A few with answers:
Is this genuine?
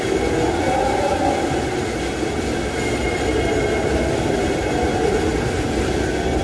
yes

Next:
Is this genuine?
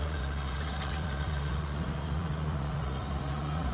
no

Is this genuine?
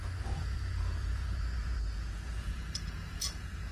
no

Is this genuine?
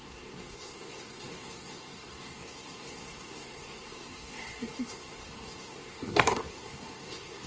no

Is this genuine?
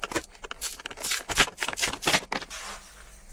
yes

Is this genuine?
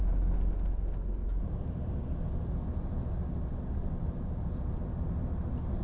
yes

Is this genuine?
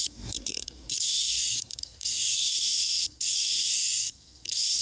no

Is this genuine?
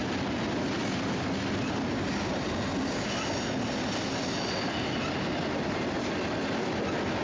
yes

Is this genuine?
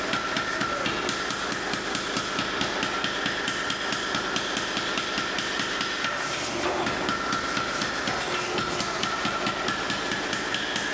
yes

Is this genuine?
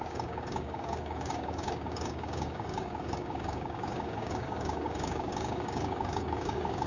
no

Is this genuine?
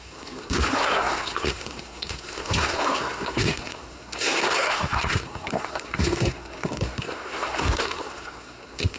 no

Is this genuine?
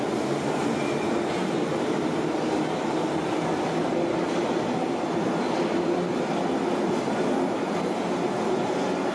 no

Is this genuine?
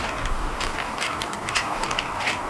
no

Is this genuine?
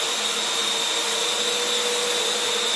yes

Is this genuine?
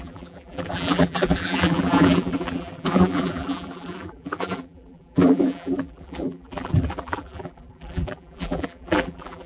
no